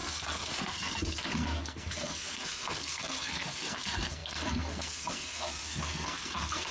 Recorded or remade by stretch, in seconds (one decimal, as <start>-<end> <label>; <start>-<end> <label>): 0.0-6.7 remade